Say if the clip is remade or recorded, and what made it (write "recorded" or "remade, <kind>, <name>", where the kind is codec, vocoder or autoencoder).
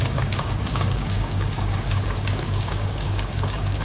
remade, codec, DAC